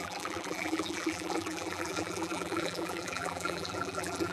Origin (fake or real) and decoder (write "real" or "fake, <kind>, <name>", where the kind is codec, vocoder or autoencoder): fake, vocoder, BigVGAN v2